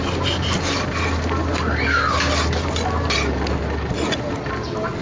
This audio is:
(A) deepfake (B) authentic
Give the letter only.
B